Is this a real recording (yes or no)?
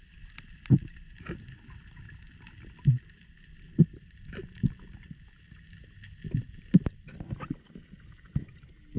yes